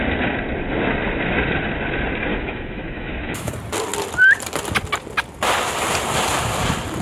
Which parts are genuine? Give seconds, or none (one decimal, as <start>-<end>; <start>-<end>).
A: 0.0-2.3; 3.5-7.0